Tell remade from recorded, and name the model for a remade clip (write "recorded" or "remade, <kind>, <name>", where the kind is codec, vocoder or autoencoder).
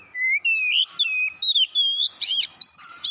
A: recorded